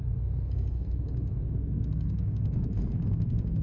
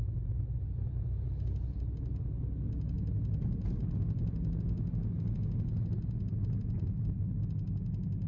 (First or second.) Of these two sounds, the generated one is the first